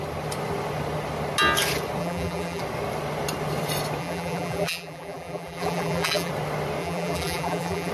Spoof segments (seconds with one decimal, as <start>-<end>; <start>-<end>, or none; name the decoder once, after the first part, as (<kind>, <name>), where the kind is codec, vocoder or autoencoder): 2.0-2.6 (vocoder, BigVGAN v2); 4.0-6.3; 6.8-7.9